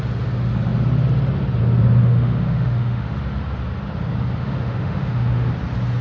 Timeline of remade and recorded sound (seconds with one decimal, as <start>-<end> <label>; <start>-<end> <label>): 0.0-2.0 recorded; 2.0-3.2 remade; 3.2-4.4 recorded; 4.4-5.5 remade; 5.5-6.0 recorded